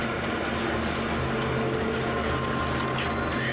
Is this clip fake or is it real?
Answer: real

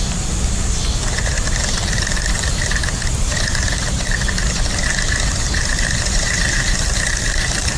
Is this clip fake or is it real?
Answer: fake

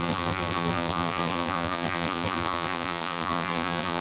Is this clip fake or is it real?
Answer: fake